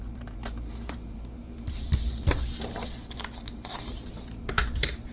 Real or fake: fake